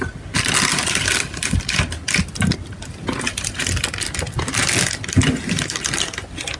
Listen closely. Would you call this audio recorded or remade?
recorded